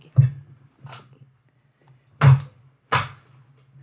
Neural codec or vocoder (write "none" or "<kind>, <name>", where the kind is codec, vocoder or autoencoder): none